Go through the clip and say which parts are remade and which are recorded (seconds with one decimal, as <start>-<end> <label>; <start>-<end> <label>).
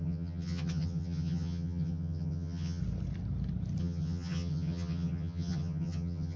0.0-2.8 remade; 2.8-3.8 recorded; 3.8-6.4 remade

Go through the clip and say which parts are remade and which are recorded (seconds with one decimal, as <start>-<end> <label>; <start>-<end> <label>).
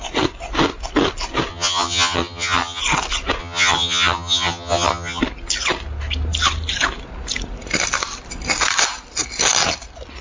0.0-1.5 recorded; 1.5-2.8 remade; 2.8-3.4 recorded; 3.4-5.2 remade; 5.2-10.2 recorded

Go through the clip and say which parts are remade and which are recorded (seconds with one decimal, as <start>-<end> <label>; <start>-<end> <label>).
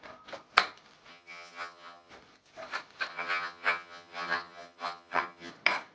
0.0-1.1 recorded; 1.1-2.1 remade; 2.1-3.1 recorded; 3.1-5.5 remade; 5.5-5.9 recorded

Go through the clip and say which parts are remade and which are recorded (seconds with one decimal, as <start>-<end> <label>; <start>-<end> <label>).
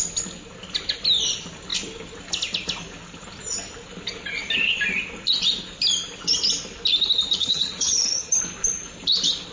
0.0-7.4 recorded; 7.4-8.4 remade; 8.4-9.5 recorded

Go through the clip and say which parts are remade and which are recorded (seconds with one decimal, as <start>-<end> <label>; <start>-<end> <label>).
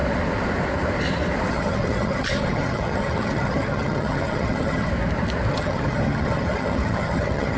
0.0-1.5 recorded; 1.5-4.9 remade; 4.9-5.5 recorded; 5.5-7.6 remade